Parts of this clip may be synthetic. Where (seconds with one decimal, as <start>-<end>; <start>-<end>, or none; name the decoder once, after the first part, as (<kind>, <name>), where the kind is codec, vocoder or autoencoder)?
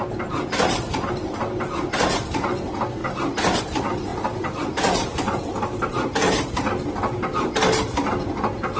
4.1-5.4 (vocoder, BigVGAN v2); 5.9-6.7